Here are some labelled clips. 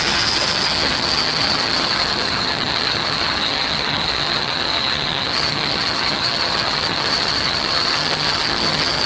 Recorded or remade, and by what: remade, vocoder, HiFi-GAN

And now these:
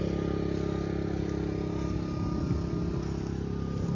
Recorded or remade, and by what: recorded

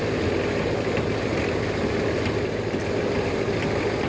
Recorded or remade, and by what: recorded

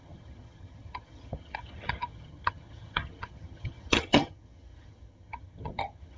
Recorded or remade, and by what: remade, vocoder, HiFi-GAN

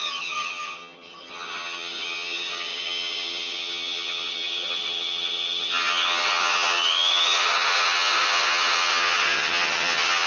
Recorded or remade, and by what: remade, vocoder, HiFi-GAN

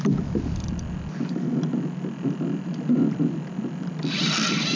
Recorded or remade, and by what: recorded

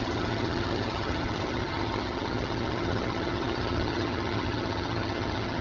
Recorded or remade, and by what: remade, vocoder, HiFi-GAN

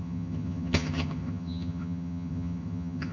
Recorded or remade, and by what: remade, vocoder, HiFi-GAN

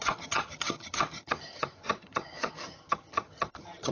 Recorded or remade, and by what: remade, vocoder, HiFi-GAN